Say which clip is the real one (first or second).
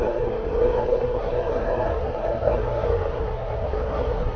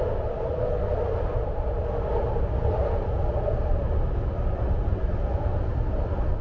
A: second